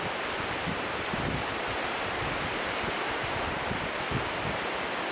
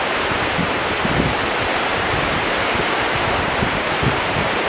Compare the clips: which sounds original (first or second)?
first